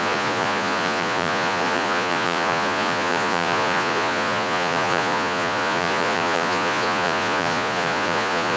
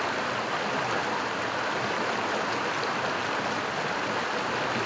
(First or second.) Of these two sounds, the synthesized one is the first